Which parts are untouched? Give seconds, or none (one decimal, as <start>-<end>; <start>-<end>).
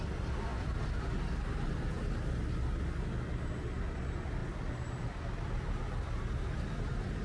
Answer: 0.0-7.2